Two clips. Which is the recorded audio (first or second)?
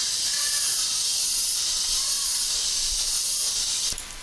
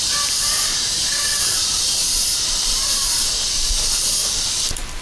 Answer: first